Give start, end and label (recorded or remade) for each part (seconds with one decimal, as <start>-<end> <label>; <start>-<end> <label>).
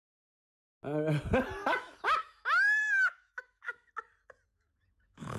0.0-1.6 recorded; 1.6-3.9 remade; 3.9-4.5 recorded; 4.5-5.4 remade